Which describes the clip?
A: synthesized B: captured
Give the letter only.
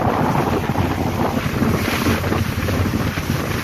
B